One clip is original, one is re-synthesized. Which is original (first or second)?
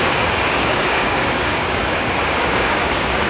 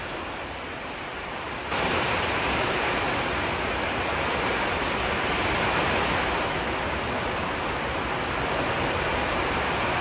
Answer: second